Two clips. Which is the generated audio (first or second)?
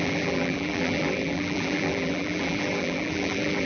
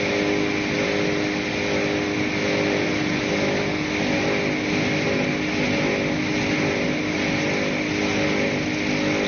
first